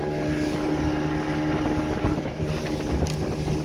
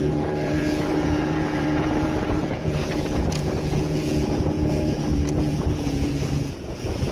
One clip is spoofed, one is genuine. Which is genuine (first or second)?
first